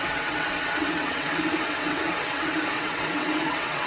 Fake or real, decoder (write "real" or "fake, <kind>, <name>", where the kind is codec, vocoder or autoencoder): fake, vocoder, WaveNeXt